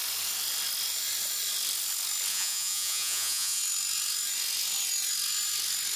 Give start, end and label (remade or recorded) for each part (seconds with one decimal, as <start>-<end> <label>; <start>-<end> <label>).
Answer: 0.0-2.3 recorded; 2.3-3.6 remade; 3.6-6.0 recorded